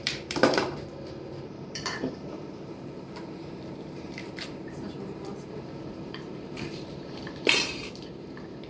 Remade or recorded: remade